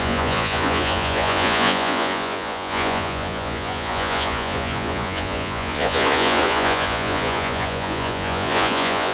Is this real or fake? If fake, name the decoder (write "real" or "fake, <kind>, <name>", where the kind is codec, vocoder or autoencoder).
fake, vocoder, Vocos